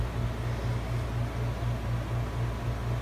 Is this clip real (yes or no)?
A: yes